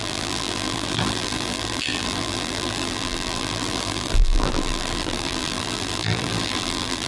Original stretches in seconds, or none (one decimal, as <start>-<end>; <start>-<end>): none